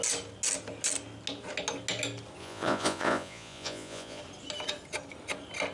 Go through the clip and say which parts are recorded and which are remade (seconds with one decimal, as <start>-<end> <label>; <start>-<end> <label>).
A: 0.0-2.4 recorded; 2.4-4.2 remade; 4.2-5.7 recorded